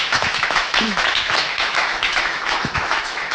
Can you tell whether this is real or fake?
fake